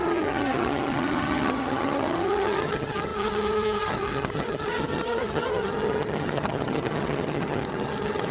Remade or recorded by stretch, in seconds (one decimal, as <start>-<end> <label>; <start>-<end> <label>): 0.0-8.3 remade

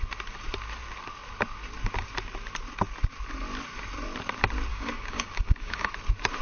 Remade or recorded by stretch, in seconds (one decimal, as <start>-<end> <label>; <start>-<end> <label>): 0.0-4.7 recorded; 4.7-5.9 remade; 5.9-6.4 recorded

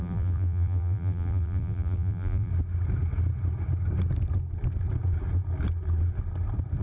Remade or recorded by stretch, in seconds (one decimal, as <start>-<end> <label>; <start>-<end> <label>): 0.0-2.5 remade; 2.5-6.8 recorded

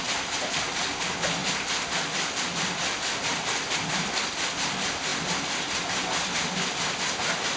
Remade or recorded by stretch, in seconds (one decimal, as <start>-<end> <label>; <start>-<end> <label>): 0.0-7.6 recorded